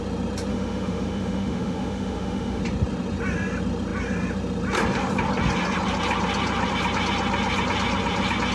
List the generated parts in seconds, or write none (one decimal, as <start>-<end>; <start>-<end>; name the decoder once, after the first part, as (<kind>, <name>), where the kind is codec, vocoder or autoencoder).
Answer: 0.5-2.6 (autoencoder, DAC-VAE)